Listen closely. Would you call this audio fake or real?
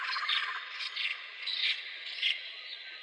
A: fake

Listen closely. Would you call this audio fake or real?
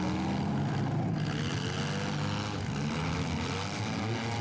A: real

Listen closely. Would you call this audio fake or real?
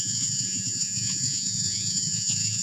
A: fake